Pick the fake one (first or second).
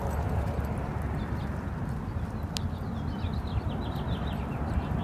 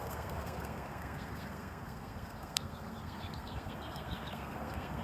second